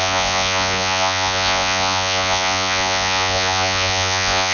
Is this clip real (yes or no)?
no